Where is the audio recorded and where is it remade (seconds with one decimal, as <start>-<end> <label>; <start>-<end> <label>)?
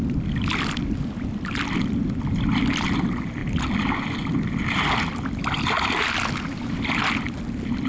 0.0-7.9 recorded